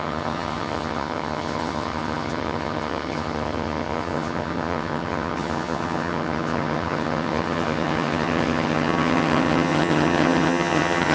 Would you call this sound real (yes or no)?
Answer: no